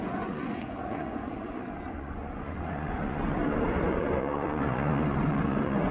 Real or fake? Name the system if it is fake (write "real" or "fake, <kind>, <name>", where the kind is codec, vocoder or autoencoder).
fake, vocoder, Vocos